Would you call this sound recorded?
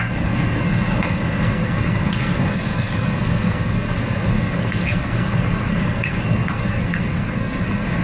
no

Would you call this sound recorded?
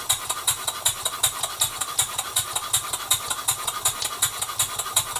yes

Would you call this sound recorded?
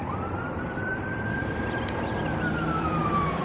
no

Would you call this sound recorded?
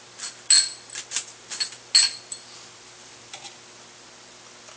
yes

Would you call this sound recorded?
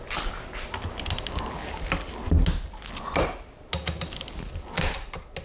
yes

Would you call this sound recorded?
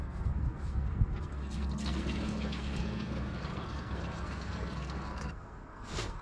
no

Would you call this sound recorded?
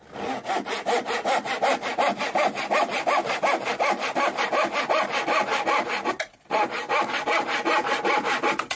yes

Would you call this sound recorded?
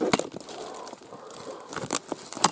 yes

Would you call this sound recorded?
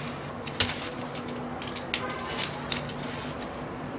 yes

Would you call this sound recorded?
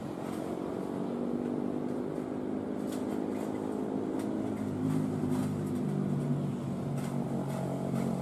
yes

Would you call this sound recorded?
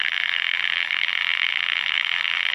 no